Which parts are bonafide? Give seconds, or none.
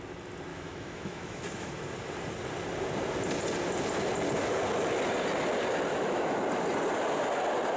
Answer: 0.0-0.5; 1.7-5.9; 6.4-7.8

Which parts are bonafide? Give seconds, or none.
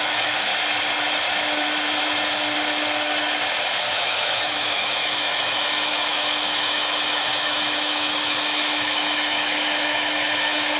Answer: 0.5-3.9